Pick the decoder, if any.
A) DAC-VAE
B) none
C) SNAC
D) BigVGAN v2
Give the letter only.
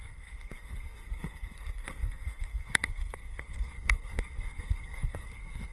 C